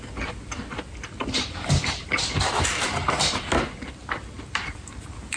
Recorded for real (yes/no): yes